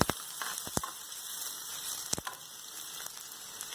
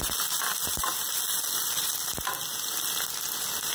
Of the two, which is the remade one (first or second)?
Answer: first